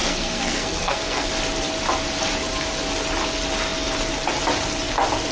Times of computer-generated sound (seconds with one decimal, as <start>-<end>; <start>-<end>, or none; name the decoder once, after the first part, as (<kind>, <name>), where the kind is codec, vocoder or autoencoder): 0.0-1.3 (codec, SNAC)